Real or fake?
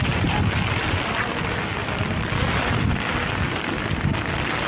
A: real